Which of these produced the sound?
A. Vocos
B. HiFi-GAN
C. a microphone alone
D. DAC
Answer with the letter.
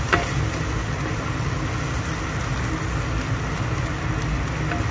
C